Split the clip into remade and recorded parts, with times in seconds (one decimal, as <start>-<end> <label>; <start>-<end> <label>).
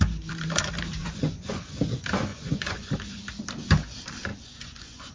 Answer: 0.0-1.0 recorded; 1.0-1.6 remade; 1.6-2.3 recorded; 2.3-2.9 remade; 2.9-4.3 recorded; 4.3-5.1 remade